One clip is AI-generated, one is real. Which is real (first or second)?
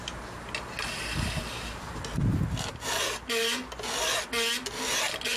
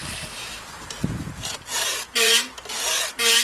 first